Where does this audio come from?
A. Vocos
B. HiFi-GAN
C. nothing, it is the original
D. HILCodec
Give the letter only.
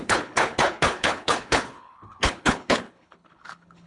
D